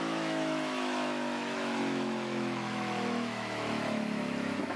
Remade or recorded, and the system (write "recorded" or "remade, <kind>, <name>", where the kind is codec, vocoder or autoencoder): remade, autoencoder, DAC-VAE